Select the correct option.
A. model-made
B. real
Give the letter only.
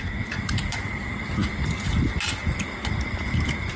B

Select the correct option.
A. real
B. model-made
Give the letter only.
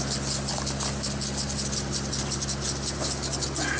A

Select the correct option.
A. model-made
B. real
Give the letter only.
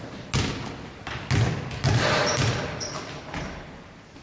B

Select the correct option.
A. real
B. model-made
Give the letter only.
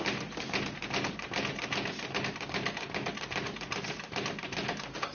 A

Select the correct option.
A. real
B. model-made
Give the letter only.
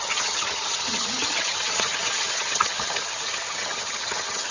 B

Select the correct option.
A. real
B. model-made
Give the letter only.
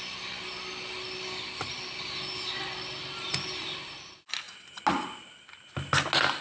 A